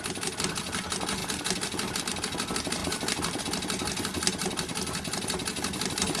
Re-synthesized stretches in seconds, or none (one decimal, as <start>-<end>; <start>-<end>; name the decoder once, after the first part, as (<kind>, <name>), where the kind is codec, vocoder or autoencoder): none